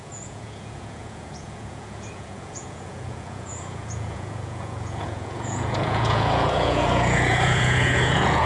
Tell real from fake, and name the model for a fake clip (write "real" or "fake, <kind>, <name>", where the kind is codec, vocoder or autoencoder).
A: fake, vocoder, Vocos